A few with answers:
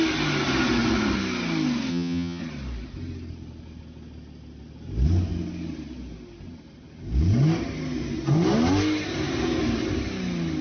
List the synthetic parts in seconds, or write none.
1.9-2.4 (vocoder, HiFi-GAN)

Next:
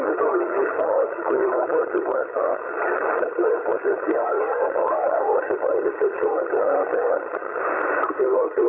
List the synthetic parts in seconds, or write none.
0.0-7.6 (vocoder, HiFi-GAN); 8.2-8.7